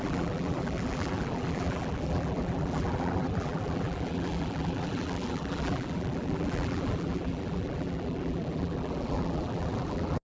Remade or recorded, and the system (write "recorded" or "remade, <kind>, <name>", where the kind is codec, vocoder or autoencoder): remade, vocoder, BigVGAN v2